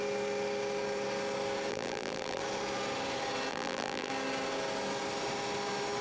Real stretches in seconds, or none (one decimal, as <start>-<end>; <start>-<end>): 0.0-1.7; 2.4-3.5; 4.1-6.0